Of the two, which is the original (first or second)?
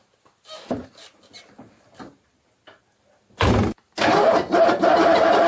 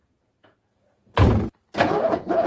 first